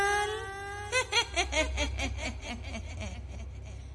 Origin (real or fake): real